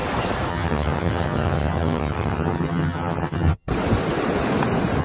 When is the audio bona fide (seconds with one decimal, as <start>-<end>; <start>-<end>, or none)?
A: 0.0-0.5; 3.7-5.0